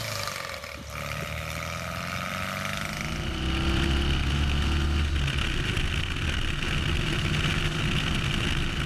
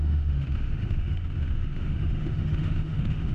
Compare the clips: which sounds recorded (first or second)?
first